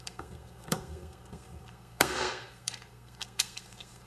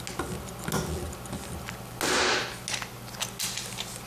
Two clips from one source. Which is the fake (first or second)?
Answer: first